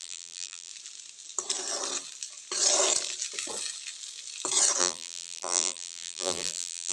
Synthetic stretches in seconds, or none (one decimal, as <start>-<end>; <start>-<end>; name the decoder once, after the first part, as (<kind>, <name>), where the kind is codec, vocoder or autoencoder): 0.0-0.7 (vocoder, BigVGAN v2); 4.8-6.9

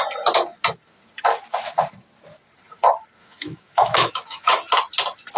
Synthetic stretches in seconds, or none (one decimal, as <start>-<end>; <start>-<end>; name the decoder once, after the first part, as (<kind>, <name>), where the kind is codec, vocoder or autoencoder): 3.2-4.5 (autoencoder, DAC-VAE)